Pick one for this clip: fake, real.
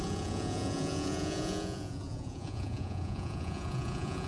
fake